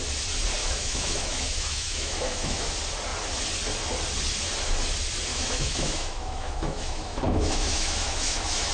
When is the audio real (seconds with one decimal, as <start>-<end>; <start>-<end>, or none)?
0.0-0.6; 2.7-5.3